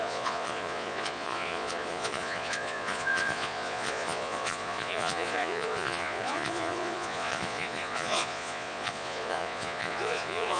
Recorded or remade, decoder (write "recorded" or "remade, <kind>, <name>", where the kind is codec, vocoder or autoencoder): remade, vocoder, Vocos